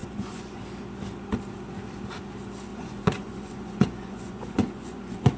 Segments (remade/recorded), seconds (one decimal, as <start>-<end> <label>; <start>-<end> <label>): 0.0-0.6 remade; 0.6-2.7 recorded; 2.7-5.4 remade

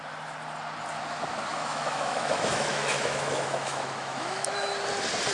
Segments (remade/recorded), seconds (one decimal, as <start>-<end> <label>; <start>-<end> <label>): 0.0-1.5 recorded; 1.5-4.7 remade; 4.7-5.3 recorded

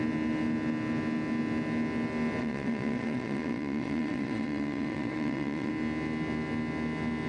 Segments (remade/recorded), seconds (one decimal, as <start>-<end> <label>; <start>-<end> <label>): 0.0-2.4 recorded; 2.4-5.7 remade; 5.7-7.3 recorded

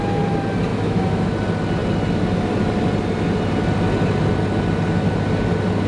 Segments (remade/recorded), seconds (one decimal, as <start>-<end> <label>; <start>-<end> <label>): 0.0-0.7 recorded; 0.7-1.3 remade; 1.3-5.9 recorded